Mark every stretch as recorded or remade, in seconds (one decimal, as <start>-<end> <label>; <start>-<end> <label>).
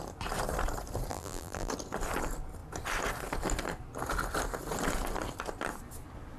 0.0-1.1 recorded; 1.1-1.7 remade; 1.7-6.4 recorded